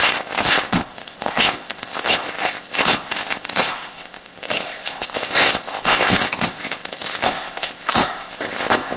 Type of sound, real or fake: fake